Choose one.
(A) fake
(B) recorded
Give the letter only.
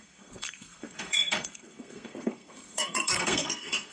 A